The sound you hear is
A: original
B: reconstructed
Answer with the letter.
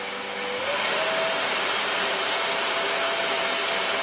A